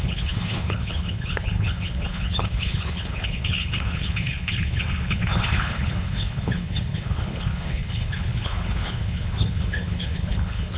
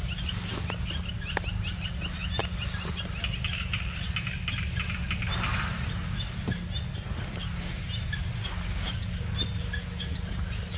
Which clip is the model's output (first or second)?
first